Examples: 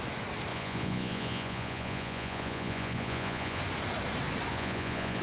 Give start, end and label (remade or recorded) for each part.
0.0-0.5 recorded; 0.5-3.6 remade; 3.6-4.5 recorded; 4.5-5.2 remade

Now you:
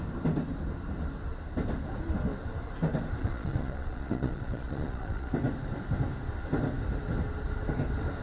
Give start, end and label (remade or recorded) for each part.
0.0-3.2 recorded; 3.2-5.3 remade; 5.3-8.2 recorded

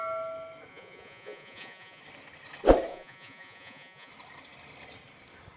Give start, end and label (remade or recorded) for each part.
0.0-0.7 recorded; 0.7-2.0 remade; 2.0-2.9 recorded; 2.9-4.1 remade; 4.1-5.6 recorded